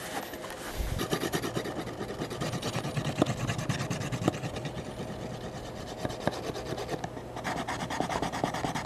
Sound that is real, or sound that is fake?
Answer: real